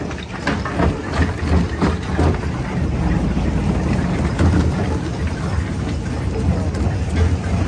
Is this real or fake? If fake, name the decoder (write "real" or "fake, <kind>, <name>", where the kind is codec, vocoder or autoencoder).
real